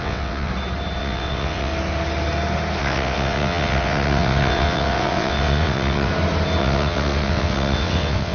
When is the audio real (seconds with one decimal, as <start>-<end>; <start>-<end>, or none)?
0.5-1.0; 1.7-2.8; 6.1-6.6

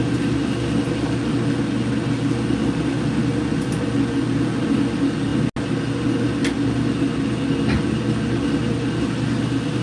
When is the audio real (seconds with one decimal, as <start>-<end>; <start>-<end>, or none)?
0.0-9.8

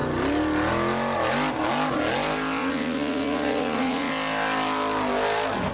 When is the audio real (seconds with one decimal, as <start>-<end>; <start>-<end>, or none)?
0.0-2.6; 4.1-5.7

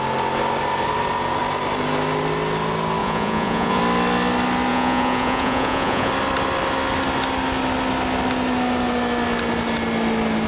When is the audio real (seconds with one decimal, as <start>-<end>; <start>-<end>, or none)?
0.0-3.0; 3.8-4.7; 6.1-10.5